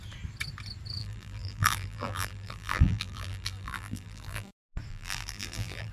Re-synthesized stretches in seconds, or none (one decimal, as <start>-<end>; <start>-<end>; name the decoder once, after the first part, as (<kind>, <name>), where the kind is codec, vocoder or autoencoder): 1.0-4.5 (vocoder, BigVGAN v2); 4.9-5.9